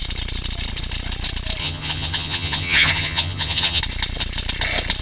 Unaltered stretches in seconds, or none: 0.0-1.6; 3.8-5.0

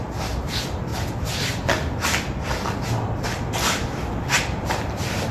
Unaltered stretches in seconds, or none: 0.0-5.3

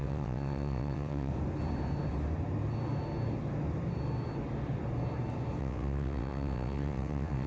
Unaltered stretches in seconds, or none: 1.3-5.6